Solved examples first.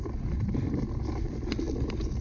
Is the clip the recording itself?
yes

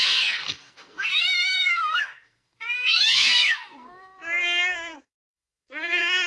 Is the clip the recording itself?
no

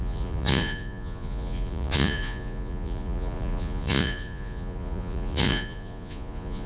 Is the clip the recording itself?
no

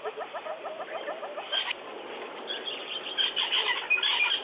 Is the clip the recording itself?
yes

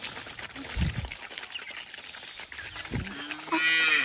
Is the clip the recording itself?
yes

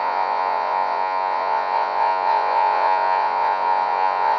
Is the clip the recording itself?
no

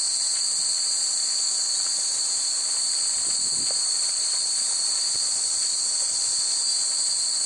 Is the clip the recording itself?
yes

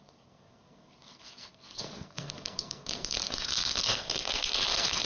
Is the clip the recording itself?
no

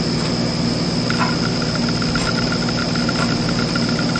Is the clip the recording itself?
yes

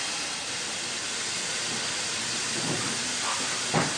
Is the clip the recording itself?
yes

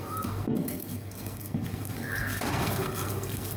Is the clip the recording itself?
no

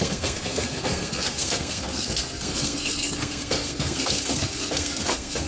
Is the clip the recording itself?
no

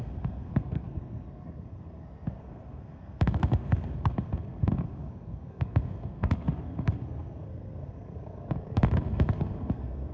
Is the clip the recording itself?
no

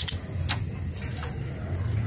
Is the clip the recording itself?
yes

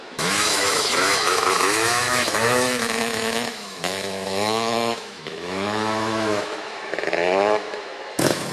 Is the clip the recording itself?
no